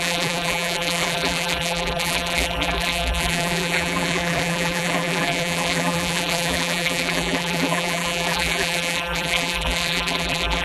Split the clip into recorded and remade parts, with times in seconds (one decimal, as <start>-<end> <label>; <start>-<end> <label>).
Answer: 0.0-10.6 remade